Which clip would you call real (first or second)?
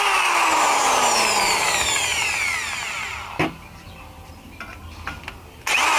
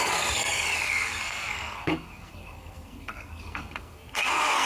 first